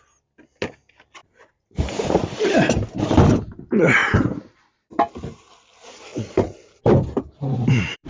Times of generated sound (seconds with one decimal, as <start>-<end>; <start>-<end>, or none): 1.2-3.0; 4.0-4.7; 6.1-8.1